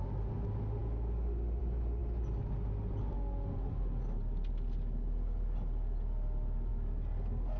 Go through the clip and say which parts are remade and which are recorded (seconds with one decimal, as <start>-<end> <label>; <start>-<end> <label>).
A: 0.0-7.6 recorded